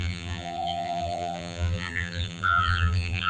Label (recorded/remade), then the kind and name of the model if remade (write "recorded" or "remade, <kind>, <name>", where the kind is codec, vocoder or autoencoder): remade, vocoder, BigVGAN v2